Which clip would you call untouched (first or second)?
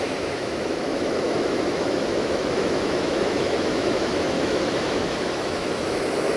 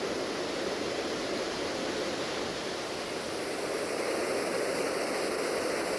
second